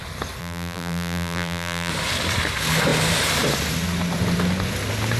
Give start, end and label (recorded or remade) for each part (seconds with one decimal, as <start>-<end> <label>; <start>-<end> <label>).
0.0-0.4 recorded; 0.4-1.9 remade; 1.9-5.2 recorded